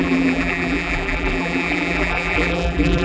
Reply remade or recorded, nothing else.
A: remade